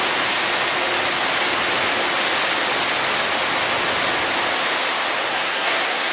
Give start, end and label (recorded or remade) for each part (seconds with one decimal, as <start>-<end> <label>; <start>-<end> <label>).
0.0-5.3 recorded; 5.3-6.1 remade

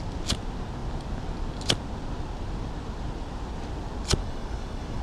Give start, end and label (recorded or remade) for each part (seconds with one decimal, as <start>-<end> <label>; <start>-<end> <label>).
0.0-4.2 recorded; 4.2-5.0 remade

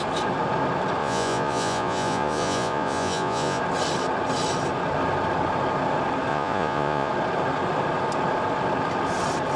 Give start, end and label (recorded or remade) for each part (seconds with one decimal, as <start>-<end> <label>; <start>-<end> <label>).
0.0-1.0 recorded; 1.0-3.6 remade; 3.6-6.3 recorded; 6.3-7.1 remade; 7.1-9.6 recorded

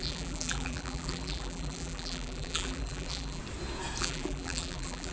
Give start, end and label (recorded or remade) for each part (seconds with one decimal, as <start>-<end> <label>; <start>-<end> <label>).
0.0-3.4 remade; 3.4-4.0 recorded; 4.0-5.1 remade